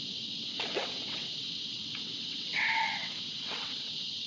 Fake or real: fake